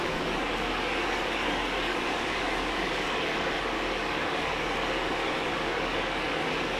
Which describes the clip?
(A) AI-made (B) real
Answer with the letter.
A